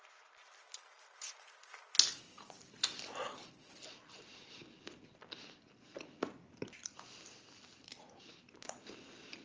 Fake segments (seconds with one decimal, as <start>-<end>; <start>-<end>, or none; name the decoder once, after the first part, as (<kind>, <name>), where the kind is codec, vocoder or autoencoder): none